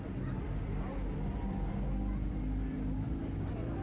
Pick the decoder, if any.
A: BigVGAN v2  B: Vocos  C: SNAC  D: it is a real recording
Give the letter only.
D